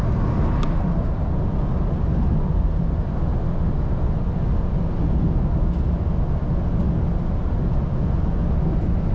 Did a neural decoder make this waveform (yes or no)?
no